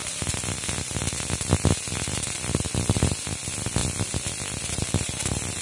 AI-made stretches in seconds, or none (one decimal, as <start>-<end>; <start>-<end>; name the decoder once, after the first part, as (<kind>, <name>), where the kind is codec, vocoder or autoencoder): none